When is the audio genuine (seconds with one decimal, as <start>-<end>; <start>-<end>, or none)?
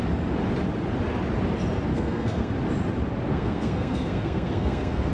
0.0-1.9; 2.5-3.3